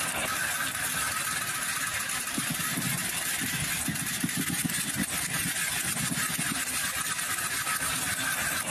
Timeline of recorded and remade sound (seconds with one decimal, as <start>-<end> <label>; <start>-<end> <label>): 0.0-8.7 recorded